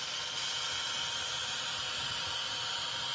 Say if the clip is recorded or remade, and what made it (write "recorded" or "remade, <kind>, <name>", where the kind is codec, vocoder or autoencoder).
recorded